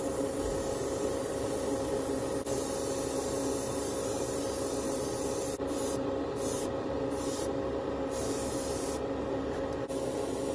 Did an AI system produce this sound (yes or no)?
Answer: no